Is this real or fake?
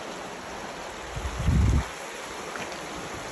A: real